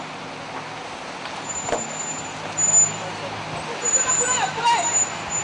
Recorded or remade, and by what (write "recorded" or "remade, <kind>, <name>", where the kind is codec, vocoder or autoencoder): recorded